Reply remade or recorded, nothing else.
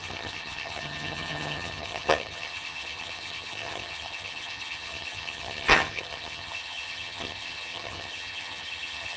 remade